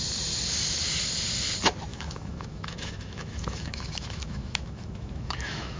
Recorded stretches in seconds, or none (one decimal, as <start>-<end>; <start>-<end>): 0.0-1.9